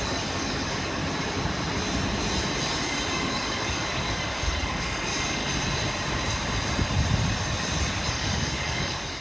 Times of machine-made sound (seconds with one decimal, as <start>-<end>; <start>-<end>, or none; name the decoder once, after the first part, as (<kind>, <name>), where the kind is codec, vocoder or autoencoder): 0.0-1.0 (codec, DAC); 3.1-5.4; 8.1-9.2